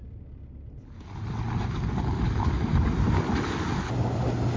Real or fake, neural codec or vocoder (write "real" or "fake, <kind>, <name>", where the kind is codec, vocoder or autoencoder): real